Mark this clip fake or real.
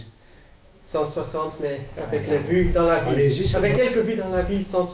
fake